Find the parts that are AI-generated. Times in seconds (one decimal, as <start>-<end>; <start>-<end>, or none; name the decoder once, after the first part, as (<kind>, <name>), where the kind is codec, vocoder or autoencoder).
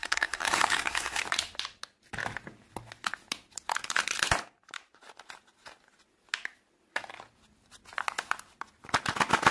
0.0-1.2 (codec, SNAC)